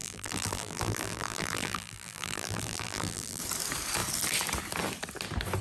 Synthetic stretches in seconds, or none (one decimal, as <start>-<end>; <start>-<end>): 0.0-3.4